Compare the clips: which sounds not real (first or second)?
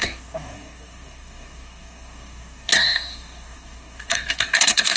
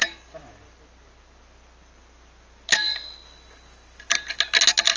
first